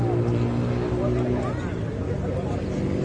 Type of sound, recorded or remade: recorded